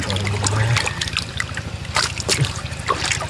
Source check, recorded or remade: recorded